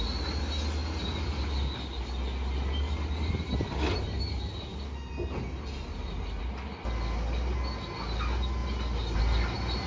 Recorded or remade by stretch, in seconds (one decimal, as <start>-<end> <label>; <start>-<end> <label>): 0.0-9.9 recorded